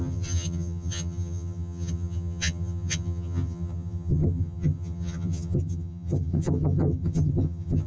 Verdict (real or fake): fake